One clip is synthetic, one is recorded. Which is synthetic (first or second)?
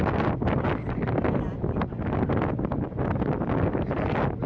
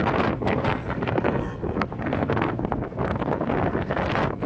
second